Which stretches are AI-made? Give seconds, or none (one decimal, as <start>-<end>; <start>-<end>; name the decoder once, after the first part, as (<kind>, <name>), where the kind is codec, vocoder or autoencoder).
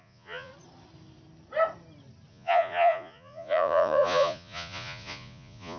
0.0-0.5 (vocoder, Vocos); 2.3-5.8